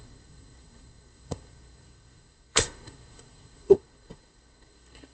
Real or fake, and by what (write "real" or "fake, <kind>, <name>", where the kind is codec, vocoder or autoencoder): fake, codec, SNAC